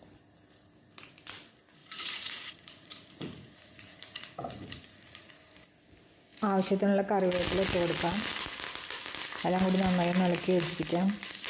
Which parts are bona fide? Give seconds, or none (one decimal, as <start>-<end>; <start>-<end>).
0.0-1.8; 5.4-11.5